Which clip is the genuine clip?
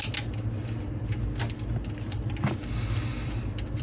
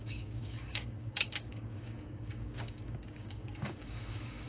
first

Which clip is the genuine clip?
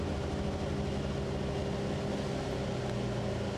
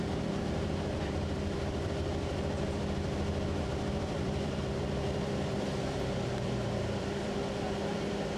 first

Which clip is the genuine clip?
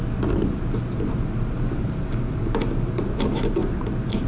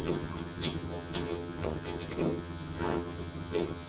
first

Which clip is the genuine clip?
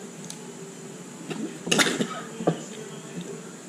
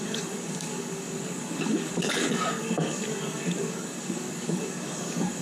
first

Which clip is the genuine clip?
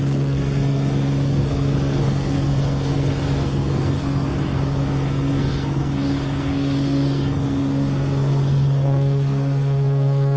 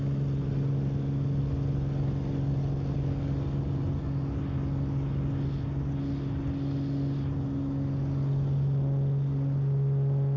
second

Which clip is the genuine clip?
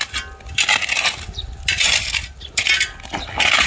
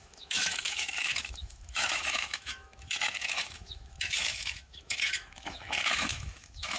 first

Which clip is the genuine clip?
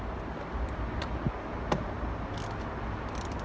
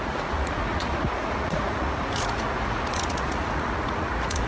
first